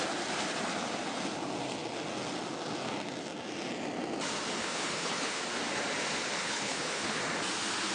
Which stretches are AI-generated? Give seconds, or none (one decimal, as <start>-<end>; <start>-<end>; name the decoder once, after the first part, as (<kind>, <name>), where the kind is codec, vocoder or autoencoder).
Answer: 4.6-5.4 (codec, HILCodec); 6.4-7.2